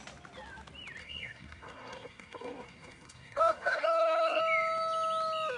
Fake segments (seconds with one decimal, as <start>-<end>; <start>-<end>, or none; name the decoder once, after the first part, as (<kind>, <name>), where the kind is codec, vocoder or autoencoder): 1.0-4.4 (codec, SNAC)